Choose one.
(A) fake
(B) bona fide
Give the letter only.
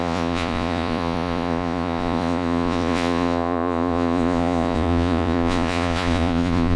A